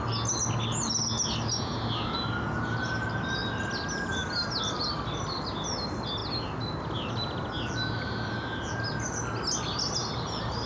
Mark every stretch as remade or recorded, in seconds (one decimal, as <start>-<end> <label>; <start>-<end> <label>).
0.0-10.7 recorded